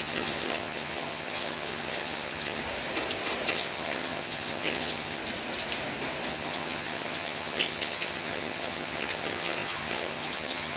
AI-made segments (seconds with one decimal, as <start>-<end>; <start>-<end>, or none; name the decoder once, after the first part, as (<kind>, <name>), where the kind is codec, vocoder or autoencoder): 0.0-2.6 (vocoder, HiFi-GAN); 3.5-5.2; 6.3-10.8